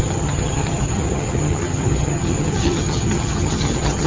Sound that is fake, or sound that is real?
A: fake